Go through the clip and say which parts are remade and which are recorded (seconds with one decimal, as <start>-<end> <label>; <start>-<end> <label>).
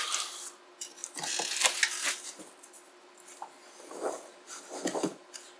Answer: 0.0-5.6 recorded